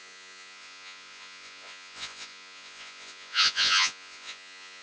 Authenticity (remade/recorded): remade